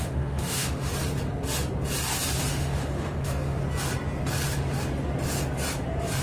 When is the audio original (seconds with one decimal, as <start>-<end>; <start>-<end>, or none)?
0.9-2.5; 3.6-6.2